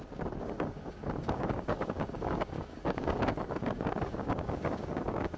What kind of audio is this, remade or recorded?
remade